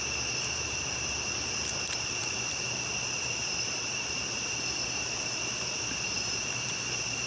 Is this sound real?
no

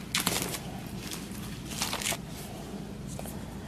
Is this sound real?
yes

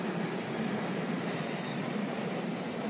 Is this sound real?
no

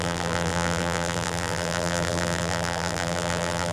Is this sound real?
no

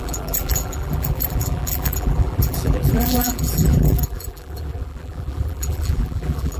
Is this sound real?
no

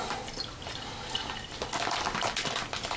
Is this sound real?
yes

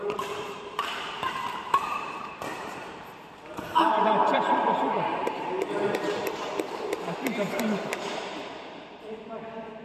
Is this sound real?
no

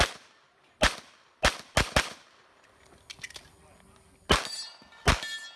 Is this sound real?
yes